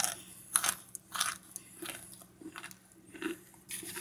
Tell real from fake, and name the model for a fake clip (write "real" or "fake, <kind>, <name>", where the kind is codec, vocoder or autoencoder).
real